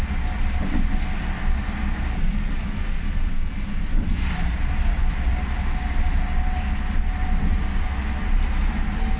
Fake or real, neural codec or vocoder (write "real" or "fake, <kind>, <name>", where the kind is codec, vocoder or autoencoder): real